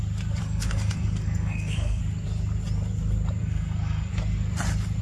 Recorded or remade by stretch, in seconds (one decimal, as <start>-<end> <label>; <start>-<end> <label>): 0.0-0.4 recorded; 0.4-2.0 remade; 2.0-3.4 recorded; 3.4-4.1 remade; 4.1-5.0 recorded